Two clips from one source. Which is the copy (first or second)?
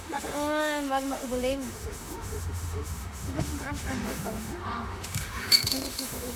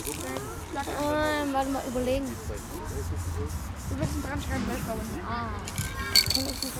first